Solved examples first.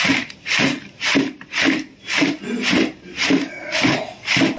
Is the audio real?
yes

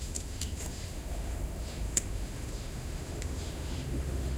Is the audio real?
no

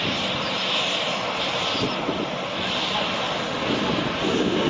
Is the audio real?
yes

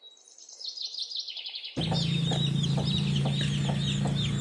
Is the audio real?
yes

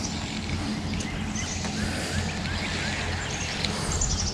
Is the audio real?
yes